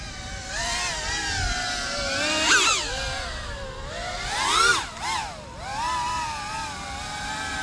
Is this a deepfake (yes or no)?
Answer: no